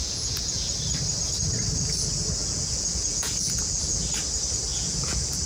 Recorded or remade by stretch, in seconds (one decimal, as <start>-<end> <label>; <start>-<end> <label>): 0.0-0.7 remade; 0.7-2.4 recorded; 2.4-4.0 remade; 4.0-4.7 recorded; 4.7-5.5 remade